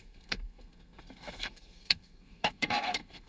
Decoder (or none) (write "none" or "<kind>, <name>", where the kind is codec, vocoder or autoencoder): codec, SNAC